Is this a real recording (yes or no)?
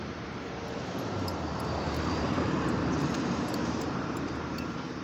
no